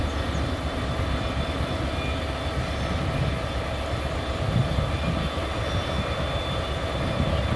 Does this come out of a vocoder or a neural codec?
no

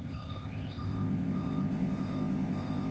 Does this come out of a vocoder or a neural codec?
yes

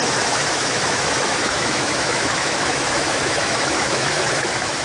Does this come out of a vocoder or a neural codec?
yes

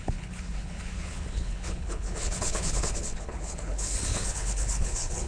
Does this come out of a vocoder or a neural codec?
yes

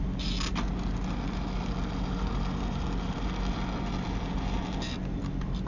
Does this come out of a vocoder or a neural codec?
no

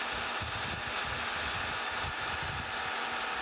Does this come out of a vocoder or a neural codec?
no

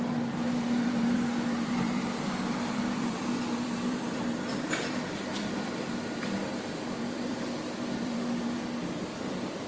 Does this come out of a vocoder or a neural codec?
yes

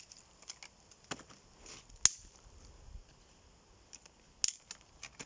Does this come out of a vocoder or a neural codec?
no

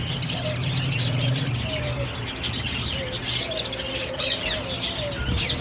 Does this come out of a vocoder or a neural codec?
no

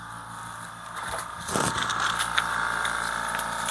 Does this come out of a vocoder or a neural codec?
no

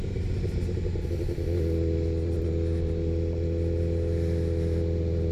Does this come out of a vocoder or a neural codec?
no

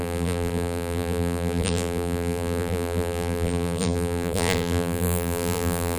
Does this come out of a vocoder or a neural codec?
yes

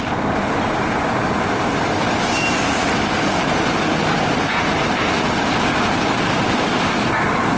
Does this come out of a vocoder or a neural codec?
no